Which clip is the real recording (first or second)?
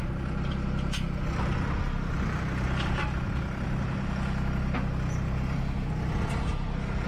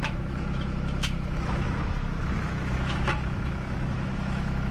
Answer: first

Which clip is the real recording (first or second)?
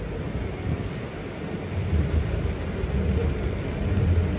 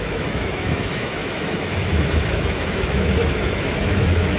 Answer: first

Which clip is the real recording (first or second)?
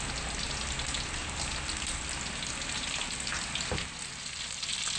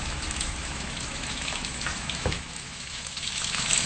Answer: first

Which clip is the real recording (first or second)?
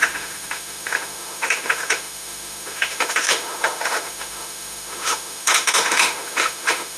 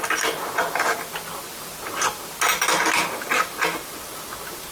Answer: second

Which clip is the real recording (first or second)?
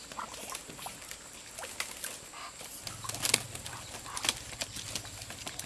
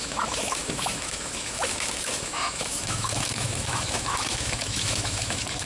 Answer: first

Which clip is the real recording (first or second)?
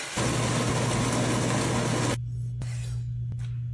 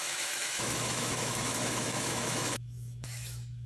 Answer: first